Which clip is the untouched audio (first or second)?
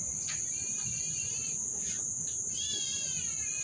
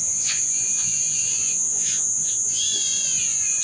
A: first